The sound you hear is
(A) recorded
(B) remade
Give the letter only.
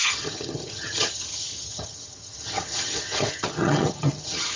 B